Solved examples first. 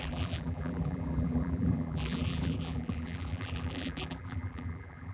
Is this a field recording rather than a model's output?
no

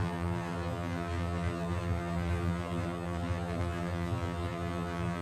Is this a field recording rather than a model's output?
no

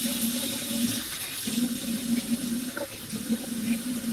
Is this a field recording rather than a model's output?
no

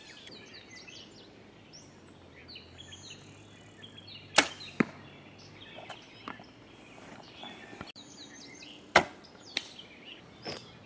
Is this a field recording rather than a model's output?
yes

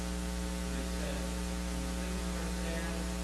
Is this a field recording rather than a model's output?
yes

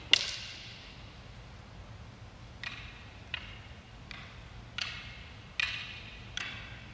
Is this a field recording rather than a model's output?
yes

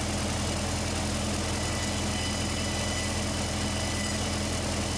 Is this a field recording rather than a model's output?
yes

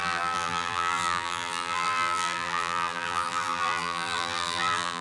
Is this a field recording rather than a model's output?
no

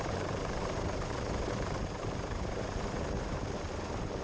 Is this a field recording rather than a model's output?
no